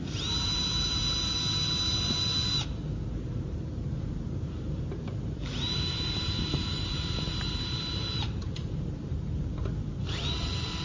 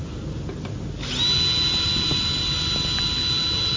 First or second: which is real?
second